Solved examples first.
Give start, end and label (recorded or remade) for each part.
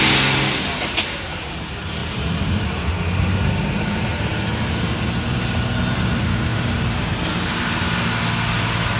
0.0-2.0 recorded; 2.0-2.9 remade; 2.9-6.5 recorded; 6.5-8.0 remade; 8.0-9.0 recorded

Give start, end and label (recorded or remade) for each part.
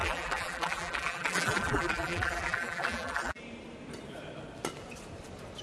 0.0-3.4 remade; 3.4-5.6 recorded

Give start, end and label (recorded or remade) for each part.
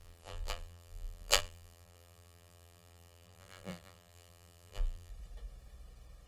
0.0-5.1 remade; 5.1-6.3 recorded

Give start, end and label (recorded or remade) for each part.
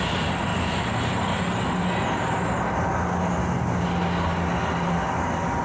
0.0-0.5 recorded; 0.5-1.1 remade; 1.1-5.6 recorded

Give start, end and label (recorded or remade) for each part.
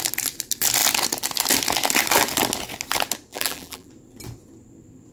0.0-3.3 recorded; 3.3-3.9 remade; 3.9-5.1 recorded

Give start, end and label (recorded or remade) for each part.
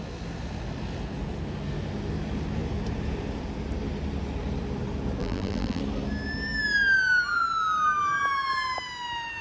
0.0-5.2 recorded; 5.2-5.8 remade; 5.8-9.4 recorded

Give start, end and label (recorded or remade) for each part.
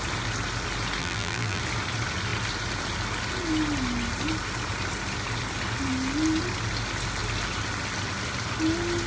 0.0-1.0 recorded; 1.0-1.6 remade; 1.6-9.1 recorded